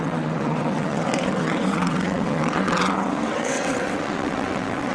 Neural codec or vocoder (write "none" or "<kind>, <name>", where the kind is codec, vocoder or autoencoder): vocoder, WaveNeXt